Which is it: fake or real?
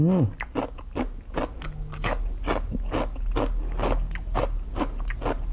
real